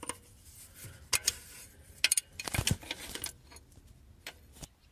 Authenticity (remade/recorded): recorded